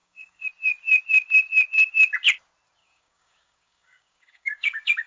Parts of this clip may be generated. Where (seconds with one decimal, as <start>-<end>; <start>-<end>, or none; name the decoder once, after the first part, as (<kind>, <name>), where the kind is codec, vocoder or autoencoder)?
0.0-0.5 (codec, DAC); 2.8-5.1